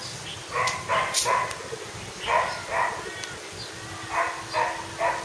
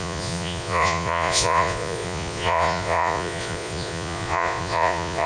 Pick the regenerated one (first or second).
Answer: second